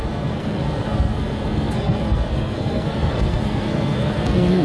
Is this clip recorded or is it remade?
remade